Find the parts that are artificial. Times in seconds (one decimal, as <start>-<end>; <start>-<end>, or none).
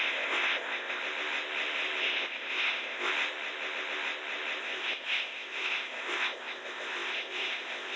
0.0-1.0; 2.0-3.1; 4.6-8.0